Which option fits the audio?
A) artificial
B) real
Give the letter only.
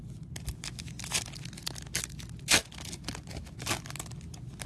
B